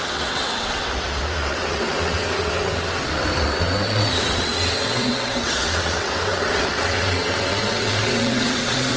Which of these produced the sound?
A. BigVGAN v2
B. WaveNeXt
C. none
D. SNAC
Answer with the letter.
B